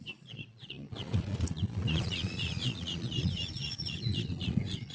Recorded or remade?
remade